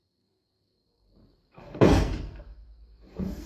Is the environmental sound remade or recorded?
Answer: remade